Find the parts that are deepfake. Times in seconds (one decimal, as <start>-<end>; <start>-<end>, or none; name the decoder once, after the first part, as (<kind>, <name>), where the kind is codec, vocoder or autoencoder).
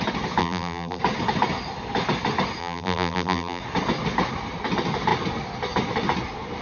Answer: 0.4-1.0 (vocoder, BigVGAN v2); 2.6-3.6